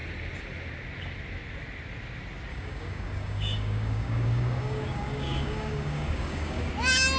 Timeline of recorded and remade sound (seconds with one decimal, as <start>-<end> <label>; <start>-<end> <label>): 0.0-2.5 recorded; 2.5-6.7 remade; 6.7-7.2 recorded